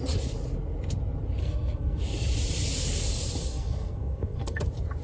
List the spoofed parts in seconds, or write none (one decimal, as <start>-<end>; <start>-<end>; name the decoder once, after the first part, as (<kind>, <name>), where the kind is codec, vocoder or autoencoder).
1.4-2.0 (codec, SNAC); 3.4-4.6